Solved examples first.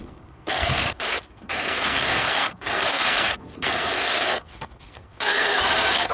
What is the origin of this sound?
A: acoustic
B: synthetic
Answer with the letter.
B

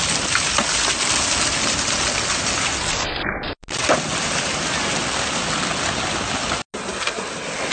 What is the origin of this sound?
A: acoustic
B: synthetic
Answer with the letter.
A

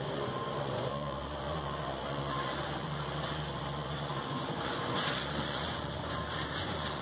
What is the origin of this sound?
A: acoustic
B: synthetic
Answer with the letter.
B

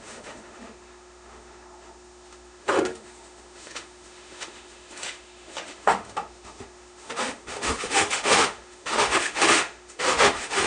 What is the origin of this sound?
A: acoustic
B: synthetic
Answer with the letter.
B